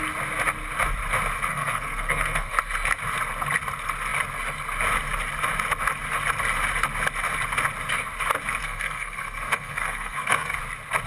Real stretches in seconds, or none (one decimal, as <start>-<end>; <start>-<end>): 0.0-1.5; 2.7-8.6; 10.6-11.1